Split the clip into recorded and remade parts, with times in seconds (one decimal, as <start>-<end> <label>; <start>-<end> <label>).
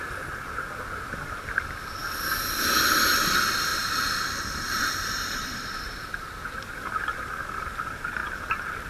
0.0-3.7 recorded; 3.7-6.3 remade; 6.3-8.9 recorded